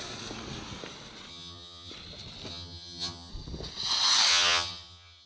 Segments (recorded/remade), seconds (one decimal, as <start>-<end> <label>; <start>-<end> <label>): 0.0-1.3 recorded; 1.3-1.9 remade; 1.9-2.5 recorded; 2.5-3.3 remade; 3.3-4.3 recorded; 4.3-5.3 remade